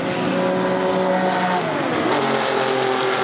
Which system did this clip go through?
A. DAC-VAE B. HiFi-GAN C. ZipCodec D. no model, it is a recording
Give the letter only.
D